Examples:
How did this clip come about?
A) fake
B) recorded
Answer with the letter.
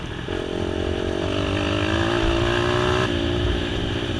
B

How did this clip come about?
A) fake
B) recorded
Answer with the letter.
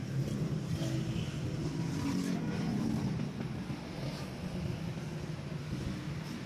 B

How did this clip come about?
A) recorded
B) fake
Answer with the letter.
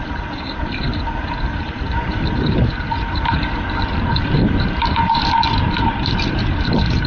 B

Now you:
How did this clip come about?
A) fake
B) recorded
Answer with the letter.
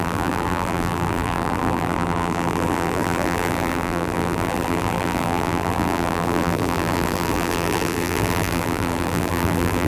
A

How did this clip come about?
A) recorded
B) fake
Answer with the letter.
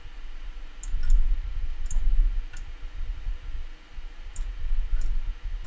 A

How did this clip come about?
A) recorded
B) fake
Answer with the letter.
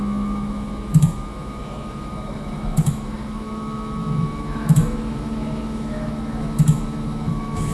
B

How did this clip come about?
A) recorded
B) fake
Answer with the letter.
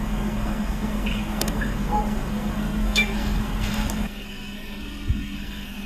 B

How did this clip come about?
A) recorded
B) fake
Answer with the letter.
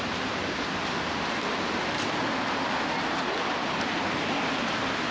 A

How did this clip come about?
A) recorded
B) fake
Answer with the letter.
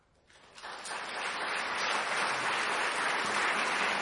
A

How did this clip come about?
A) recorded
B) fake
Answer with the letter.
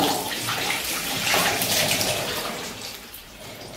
B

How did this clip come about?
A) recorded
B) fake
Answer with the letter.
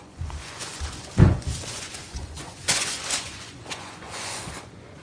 B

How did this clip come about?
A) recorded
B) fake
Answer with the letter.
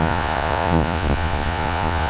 B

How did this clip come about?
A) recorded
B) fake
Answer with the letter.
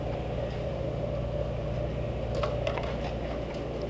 A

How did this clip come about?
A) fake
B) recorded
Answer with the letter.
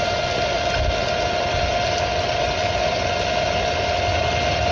B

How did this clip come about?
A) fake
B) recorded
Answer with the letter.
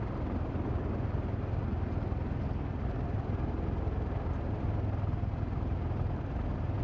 B